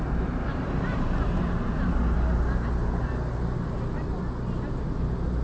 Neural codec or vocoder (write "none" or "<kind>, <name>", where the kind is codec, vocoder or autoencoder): none